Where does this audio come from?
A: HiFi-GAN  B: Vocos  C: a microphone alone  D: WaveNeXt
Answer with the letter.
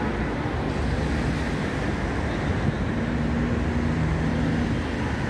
C